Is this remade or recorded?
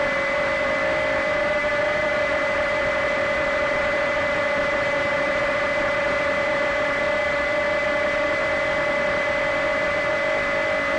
recorded